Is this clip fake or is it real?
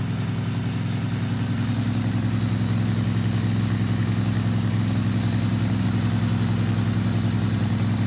real